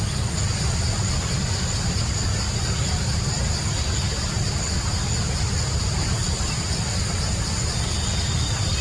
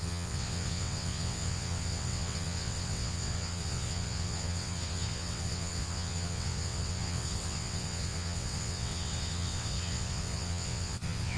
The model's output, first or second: second